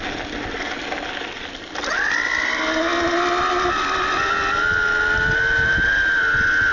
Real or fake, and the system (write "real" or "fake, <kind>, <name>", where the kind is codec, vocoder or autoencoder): real